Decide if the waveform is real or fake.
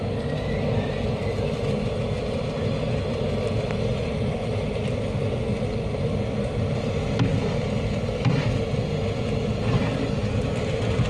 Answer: real